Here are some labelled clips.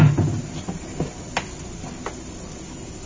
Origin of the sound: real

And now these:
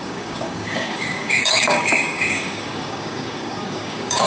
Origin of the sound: fake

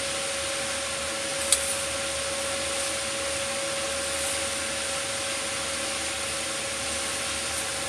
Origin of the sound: real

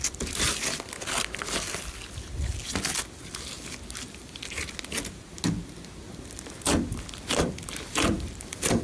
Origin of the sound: real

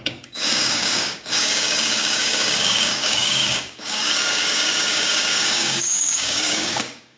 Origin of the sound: fake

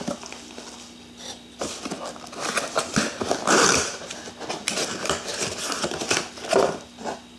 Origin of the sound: real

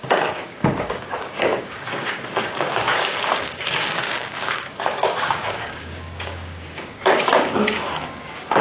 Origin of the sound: fake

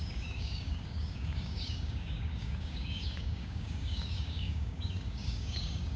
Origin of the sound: fake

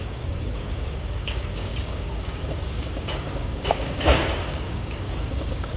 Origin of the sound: fake